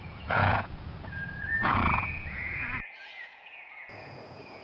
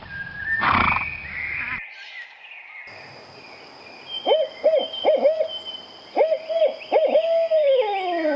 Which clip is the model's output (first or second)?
first